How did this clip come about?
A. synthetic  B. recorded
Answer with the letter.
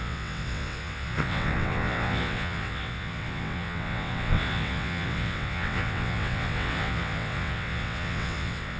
A